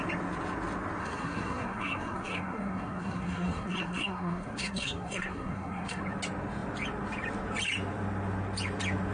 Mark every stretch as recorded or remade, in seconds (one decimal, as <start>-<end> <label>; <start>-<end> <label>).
0.0-1.0 recorded; 1.0-6.0 remade; 6.0-9.1 recorded

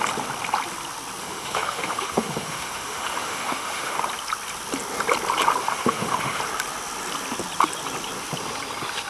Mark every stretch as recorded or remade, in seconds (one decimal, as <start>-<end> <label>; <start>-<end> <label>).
0.0-1.2 recorded; 1.2-4.0 remade; 4.0-5.6 recorded; 5.6-6.4 remade; 6.4-9.1 recorded

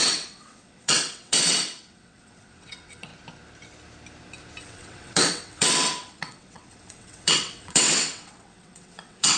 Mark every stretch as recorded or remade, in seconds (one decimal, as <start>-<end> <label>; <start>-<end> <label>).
0.0-3.1 remade; 3.1-4.6 recorded; 4.6-9.4 remade

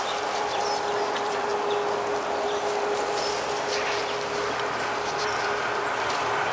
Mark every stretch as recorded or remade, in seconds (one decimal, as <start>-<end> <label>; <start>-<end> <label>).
0.0-1.5 remade; 1.5-5.2 recorded; 5.2-6.5 remade

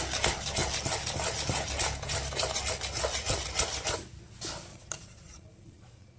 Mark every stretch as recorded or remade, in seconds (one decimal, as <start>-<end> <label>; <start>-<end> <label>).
0.0-4.7 recorded; 4.7-6.2 remade

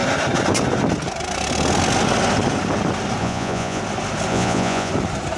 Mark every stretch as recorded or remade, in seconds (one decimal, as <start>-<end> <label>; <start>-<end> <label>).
0.0-3.2 recorded; 3.2-3.8 remade; 3.8-4.3 recorded; 4.3-4.9 remade; 4.9-5.4 recorded